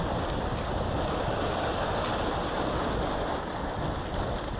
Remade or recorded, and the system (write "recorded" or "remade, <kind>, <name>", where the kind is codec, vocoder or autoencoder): recorded